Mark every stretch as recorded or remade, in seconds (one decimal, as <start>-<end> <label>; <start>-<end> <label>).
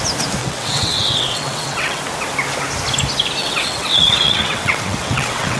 0.0-0.4 recorded; 0.4-2.0 remade; 2.0-3.4 recorded; 3.4-5.6 remade